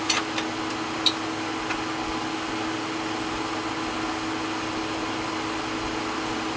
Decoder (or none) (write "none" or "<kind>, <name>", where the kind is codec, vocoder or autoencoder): none